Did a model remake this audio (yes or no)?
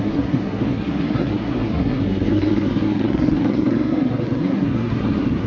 yes